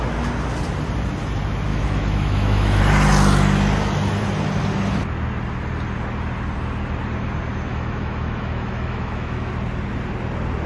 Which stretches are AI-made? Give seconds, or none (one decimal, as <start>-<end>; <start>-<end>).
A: 1.7-2.8; 7.7-9.5